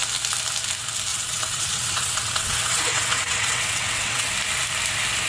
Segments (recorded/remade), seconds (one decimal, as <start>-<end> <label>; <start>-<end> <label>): 0.0-1.1 recorded; 1.1-4.3 remade; 4.3-5.3 recorded